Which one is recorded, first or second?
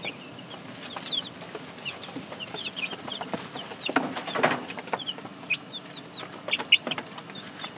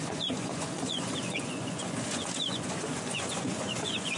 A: first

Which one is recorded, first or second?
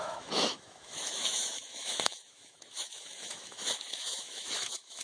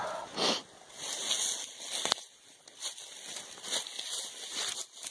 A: second